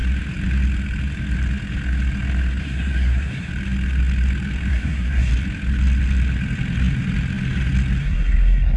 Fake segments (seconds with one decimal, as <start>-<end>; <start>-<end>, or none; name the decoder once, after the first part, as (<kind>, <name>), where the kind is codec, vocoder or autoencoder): 2.6-3.5 (codec, SNAC); 4.7-5.3; 8.0-8.8